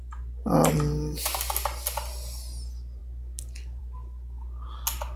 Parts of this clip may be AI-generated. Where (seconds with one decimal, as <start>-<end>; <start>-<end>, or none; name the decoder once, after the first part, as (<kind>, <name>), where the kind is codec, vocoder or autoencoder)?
none